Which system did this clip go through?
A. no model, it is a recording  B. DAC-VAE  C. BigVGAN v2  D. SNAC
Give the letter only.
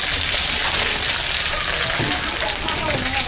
A